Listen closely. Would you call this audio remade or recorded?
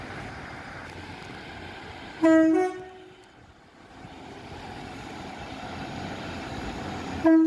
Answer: recorded